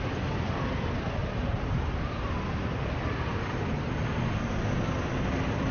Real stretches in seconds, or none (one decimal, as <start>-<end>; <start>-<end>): 0.0-1.2; 4.6-5.7